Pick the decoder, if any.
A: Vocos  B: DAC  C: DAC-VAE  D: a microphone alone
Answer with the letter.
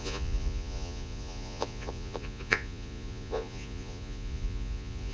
A